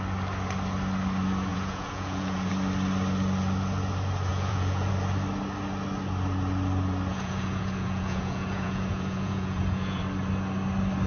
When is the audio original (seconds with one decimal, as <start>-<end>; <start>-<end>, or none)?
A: 0.0-1.5; 2.5-4.3; 4.9-7.1; 10.0-11.1